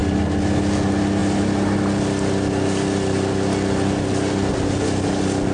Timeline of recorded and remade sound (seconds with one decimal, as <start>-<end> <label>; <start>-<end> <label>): 0.0-5.5 recorded